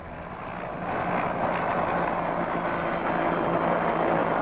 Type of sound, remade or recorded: recorded